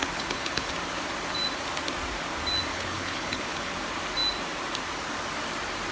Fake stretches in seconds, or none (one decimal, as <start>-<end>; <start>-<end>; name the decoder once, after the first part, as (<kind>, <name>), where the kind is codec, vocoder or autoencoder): 0.0-0.7 (codec, HILCodec); 2.7-3.7